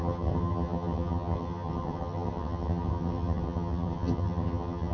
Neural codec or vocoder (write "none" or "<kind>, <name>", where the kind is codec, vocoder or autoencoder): vocoder, HiFi-GAN